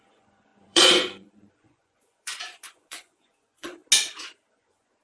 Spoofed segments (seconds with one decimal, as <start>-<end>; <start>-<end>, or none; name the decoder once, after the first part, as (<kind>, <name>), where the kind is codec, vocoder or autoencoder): 0.0-3.8 (vocoder, Vocos); 4.5-5.0